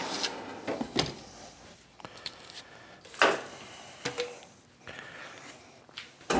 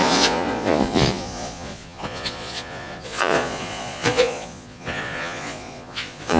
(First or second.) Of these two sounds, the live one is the first